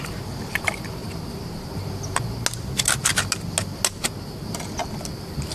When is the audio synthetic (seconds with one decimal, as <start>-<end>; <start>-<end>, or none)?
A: none